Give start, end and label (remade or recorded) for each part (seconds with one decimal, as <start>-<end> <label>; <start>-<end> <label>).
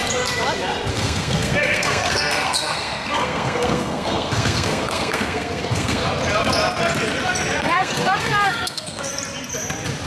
0.0-0.9 recorded; 0.9-6.0 remade; 6.0-7.6 recorded; 7.6-9.1 remade; 9.1-10.1 recorded